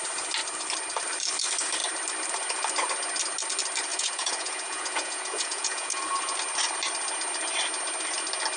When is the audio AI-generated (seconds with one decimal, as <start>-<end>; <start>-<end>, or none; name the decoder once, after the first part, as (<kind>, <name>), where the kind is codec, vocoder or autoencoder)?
3.9-6.0 (vocoder, Vocos)